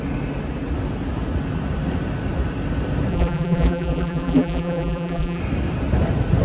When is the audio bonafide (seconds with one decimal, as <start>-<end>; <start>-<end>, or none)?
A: 0.0-3.1; 5.4-6.4